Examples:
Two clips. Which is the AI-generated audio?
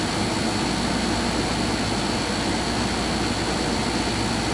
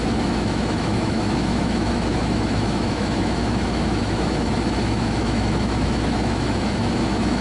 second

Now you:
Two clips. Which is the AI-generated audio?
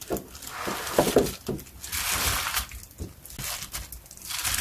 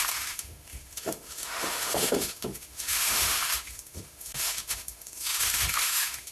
second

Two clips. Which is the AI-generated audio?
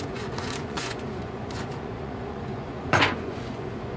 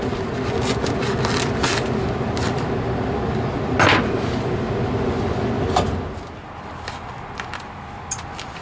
first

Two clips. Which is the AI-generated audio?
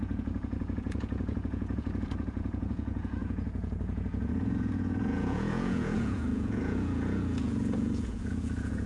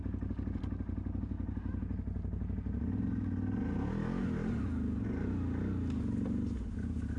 first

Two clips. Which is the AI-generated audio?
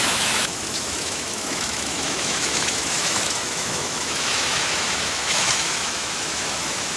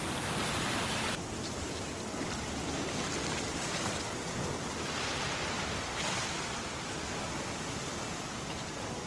first